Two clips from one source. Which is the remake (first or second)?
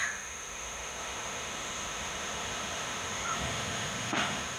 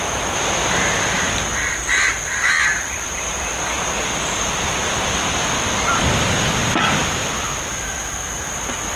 first